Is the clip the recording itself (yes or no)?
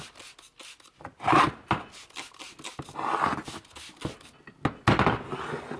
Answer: yes